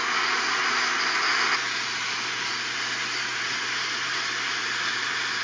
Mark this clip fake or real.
real